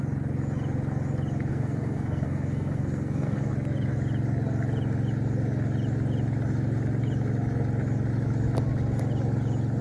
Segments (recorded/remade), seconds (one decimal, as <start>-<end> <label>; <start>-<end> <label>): 0.0-1.5 recorded; 1.5-3.5 remade; 3.5-9.8 recorded